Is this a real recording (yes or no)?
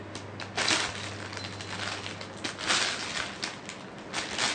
yes